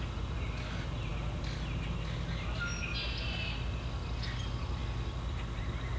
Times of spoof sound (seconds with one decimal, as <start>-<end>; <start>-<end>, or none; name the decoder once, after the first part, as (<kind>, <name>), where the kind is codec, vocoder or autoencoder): none